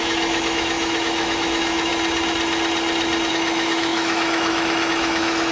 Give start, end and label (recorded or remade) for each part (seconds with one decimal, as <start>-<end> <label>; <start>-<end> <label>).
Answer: 0.0-1.9 remade; 1.9-3.3 recorded; 3.3-5.5 remade